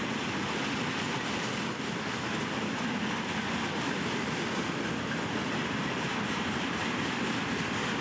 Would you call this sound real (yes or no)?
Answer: yes